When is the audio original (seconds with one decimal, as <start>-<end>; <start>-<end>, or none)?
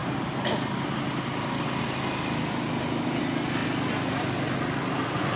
0.0-5.4